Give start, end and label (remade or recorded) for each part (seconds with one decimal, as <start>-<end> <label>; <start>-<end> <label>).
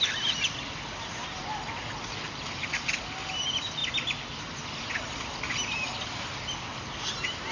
0.0-7.5 recorded